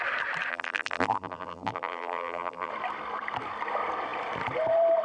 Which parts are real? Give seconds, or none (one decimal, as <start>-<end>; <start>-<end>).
0.0-0.5; 2.7-5.0